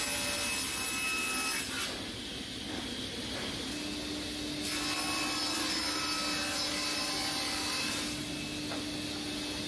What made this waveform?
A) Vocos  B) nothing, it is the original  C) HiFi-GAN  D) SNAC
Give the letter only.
B